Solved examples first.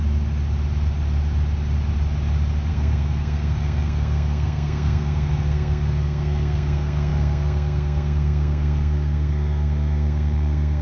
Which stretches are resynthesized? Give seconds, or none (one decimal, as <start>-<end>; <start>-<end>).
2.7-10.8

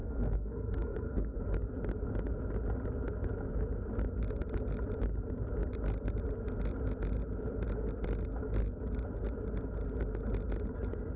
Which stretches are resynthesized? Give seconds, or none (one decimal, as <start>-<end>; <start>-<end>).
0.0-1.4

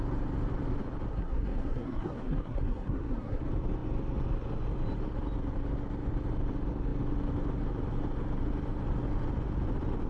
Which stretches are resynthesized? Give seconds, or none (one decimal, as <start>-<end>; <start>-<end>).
1.1-3.4

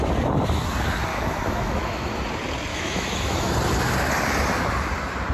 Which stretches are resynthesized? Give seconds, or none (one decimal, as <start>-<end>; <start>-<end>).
1.1-2.2; 2.7-3.5